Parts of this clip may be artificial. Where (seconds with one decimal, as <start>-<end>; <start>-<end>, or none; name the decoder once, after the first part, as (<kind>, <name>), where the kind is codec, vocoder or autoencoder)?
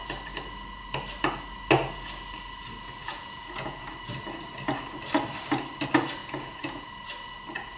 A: 3.0-3.8 (vocoder, Vocos); 6.2-6.9